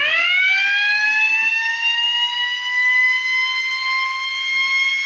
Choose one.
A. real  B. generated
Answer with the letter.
A